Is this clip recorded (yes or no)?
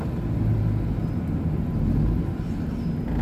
yes